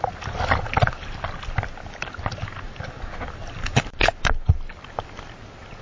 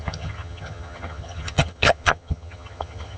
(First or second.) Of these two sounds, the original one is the first